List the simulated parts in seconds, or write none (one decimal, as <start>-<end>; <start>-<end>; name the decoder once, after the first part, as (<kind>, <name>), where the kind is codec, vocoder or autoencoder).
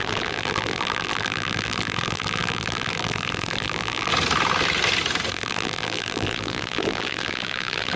0.0-4.1 (vocoder, BigVGAN v2); 5.3-8.0